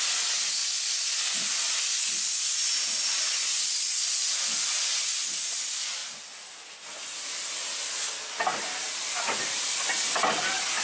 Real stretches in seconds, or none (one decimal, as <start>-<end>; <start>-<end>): 0.0-8.5; 9.6-10.8